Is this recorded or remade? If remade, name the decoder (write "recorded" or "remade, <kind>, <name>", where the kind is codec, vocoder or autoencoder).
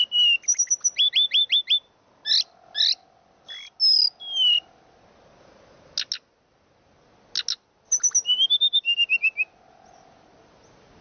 recorded